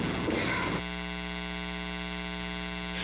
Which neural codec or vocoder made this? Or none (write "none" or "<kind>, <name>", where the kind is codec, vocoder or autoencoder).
none